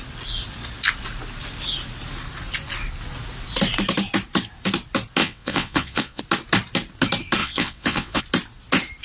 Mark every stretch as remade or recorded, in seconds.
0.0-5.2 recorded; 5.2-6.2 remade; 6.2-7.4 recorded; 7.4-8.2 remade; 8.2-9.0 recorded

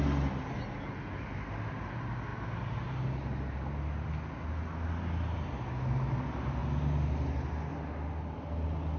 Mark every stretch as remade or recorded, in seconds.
0.0-9.0 recorded

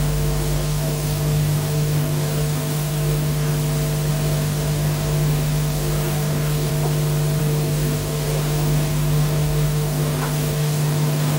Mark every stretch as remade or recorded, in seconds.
0.0-3.5 remade; 3.5-4.1 recorded; 4.1-6.7 remade; 6.7-7.4 recorded; 7.4-11.4 remade